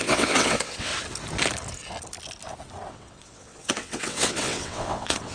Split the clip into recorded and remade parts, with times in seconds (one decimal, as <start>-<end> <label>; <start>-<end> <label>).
0.0-0.9 remade; 0.9-2.9 recorded; 2.9-5.3 remade